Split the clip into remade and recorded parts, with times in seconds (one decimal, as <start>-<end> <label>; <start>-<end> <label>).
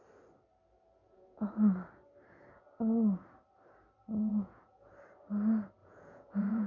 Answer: 0.0-1.0 recorded; 1.0-1.5 remade; 1.5-4.3 recorded; 4.3-4.9 remade; 4.9-5.8 recorded; 5.8-6.7 remade